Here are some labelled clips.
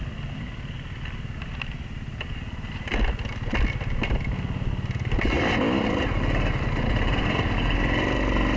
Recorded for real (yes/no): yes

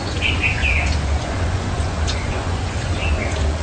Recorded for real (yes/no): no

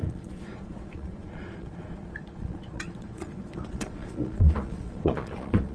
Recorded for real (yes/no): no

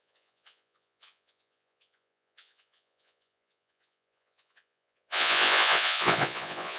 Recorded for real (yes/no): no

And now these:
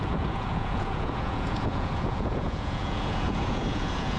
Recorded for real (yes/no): no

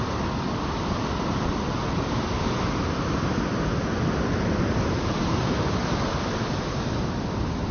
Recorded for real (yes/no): yes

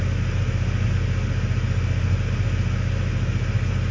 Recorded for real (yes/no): yes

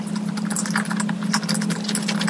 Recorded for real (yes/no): yes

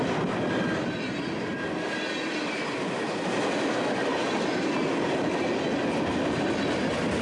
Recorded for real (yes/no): yes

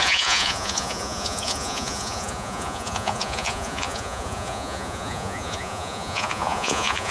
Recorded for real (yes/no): no